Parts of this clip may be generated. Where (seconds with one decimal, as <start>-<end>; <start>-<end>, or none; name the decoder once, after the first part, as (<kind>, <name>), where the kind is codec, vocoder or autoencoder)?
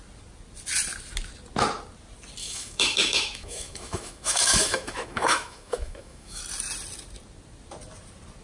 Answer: 2.4-6.4 (autoencoder, DAC-VAE)